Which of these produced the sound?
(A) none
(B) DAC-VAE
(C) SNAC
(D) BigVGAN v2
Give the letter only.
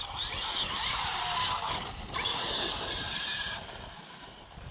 A